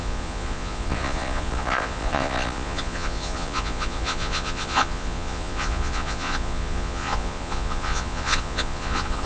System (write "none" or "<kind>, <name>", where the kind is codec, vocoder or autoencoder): vocoder, Vocos